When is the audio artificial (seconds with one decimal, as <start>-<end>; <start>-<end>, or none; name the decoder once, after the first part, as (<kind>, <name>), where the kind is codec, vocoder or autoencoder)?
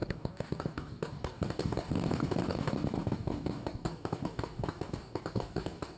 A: 0.0-6.0 (codec, DAC)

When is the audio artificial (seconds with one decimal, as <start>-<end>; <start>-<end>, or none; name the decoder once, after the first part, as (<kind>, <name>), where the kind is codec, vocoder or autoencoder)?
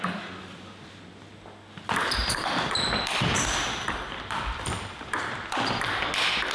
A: 2.2-6.1 (vocoder, BigVGAN v2)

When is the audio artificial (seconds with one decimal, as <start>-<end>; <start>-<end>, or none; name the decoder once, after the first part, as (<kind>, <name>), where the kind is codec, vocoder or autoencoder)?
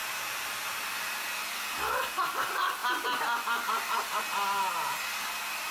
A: none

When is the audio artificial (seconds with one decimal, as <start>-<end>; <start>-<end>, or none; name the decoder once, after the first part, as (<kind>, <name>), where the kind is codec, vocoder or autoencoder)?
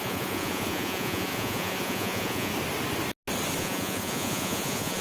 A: 0.0-2.5 (vocoder, Vocos); 3.6-5.0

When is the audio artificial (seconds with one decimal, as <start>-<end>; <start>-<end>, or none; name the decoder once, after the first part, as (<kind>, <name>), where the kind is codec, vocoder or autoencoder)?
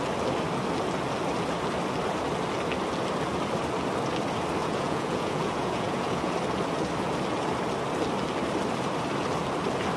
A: 4.6-6.3 (vocoder, Vocos)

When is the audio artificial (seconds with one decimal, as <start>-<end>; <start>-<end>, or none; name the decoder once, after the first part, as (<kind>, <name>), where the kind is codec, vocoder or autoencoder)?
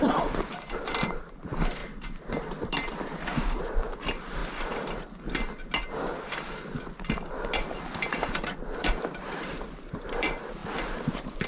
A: 0.0-1.8 (vocoder, BigVGAN v2); 3.6-4.4; 8.8-10.6